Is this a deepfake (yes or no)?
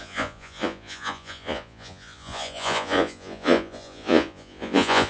yes